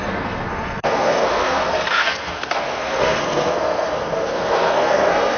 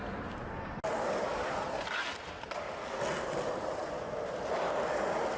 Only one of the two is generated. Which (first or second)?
first